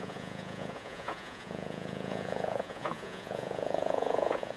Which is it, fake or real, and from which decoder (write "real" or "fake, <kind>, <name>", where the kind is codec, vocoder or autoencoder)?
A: fake, vocoder, Vocos